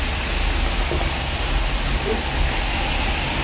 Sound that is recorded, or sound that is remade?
recorded